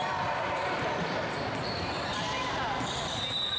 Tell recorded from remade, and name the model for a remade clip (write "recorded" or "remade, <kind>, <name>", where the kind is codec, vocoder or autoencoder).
remade, vocoder, BigVGAN v2